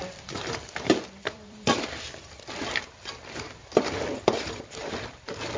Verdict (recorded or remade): remade